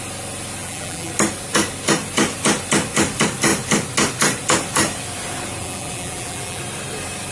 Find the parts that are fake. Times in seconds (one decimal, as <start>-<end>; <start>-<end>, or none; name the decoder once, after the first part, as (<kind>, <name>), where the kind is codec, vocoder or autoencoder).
0.6-1.1 (vocoder, BigVGAN v2); 5.6-6.6